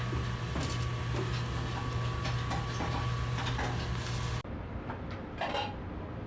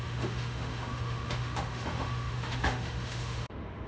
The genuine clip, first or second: first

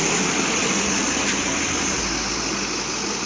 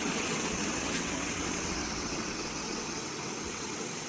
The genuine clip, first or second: first